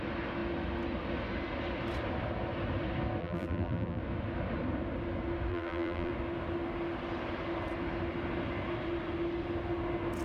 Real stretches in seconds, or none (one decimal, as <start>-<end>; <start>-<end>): 0.0-3.2; 4.0-5.5; 6.1-10.2